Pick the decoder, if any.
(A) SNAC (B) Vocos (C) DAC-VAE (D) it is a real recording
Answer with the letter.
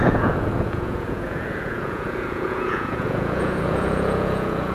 B